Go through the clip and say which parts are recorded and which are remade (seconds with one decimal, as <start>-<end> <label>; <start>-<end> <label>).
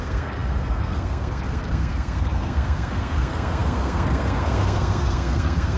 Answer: 0.0-5.8 remade